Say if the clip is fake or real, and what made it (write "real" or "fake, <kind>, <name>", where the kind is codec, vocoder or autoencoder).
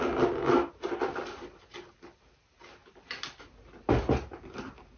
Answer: real